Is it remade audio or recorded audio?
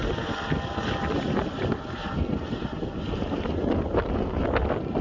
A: recorded